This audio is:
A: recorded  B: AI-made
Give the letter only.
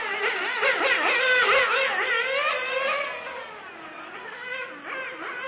A